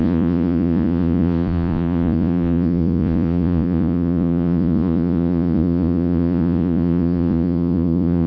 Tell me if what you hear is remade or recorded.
remade